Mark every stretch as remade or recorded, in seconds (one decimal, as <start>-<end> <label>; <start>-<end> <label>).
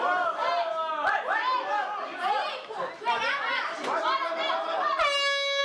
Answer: 0.0-5.6 recorded